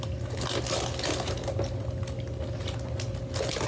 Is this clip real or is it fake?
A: real